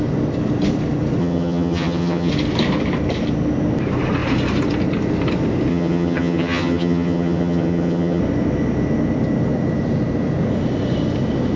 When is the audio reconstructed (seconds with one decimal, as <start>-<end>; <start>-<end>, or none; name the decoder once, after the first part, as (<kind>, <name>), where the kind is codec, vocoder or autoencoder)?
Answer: 1.2-2.3 (vocoder, HiFi-GAN); 5.7-8.2